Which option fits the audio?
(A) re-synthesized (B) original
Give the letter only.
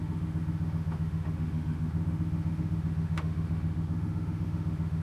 A